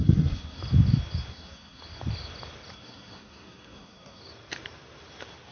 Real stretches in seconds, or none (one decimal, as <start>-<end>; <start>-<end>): 0.6-1.3; 1.8-2.7; 4.2-5.5